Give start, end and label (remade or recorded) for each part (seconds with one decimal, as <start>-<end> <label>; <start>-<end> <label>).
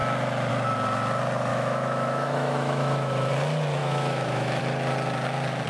0.0-1.5 recorded; 1.5-3.3 remade; 3.3-3.8 recorded; 3.8-4.6 remade; 4.6-5.7 recorded